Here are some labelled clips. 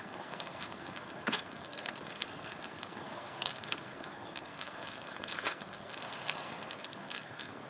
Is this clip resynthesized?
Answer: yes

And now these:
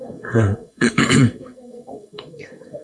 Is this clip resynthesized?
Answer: yes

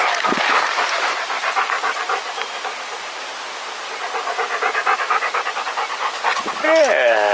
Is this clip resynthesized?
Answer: no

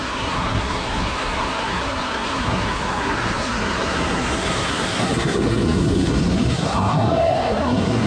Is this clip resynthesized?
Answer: yes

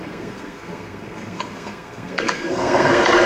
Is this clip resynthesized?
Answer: yes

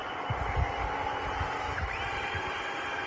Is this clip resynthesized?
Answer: no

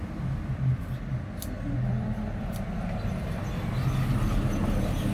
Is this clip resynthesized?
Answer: no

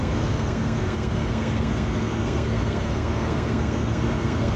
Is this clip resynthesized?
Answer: yes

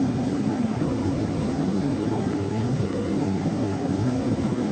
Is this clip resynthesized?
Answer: yes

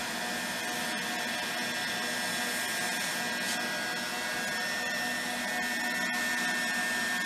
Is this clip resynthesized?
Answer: no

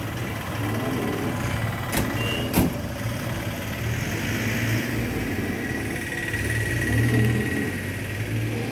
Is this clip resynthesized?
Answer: no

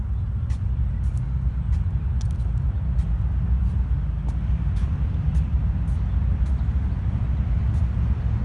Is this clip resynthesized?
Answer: no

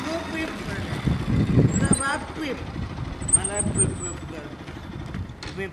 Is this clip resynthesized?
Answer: no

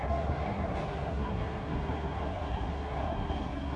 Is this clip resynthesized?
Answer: yes